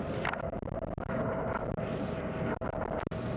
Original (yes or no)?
yes